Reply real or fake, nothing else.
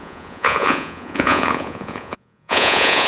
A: fake